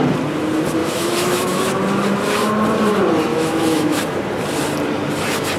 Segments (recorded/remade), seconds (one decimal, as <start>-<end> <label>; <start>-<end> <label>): 0.0-0.8 recorded; 0.8-1.6 remade; 1.6-3.3 recorded; 3.3-4.0 remade; 4.0-5.6 recorded